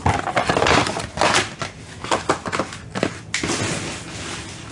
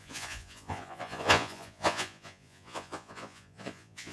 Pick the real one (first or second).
first